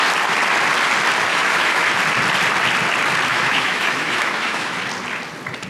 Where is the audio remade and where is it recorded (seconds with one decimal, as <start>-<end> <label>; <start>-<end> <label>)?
0.0-1.3 recorded; 1.3-1.9 remade; 1.9-3.3 recorded; 3.3-4.8 remade; 4.8-5.7 recorded